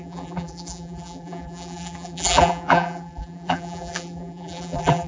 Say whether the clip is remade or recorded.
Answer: remade